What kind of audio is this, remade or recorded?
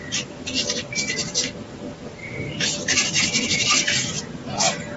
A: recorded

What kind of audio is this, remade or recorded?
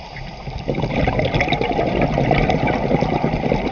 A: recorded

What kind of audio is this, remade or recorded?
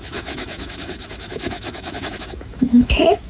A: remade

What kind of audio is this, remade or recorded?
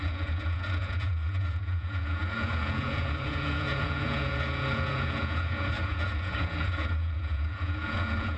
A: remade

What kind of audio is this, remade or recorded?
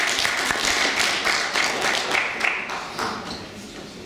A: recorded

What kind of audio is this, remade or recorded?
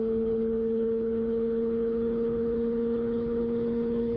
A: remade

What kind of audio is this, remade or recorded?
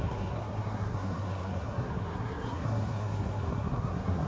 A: remade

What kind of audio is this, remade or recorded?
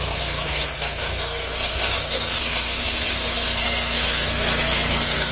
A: remade